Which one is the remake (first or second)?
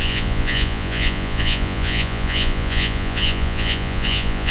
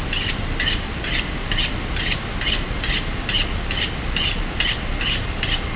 first